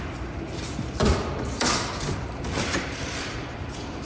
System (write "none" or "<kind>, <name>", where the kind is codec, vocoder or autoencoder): vocoder, BigVGAN v2